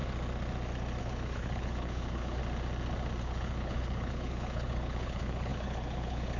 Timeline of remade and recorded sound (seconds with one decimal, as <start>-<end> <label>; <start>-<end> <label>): 0.0-1.0 recorded; 1.0-2.4 remade; 2.4-3.2 recorded; 3.2-6.4 remade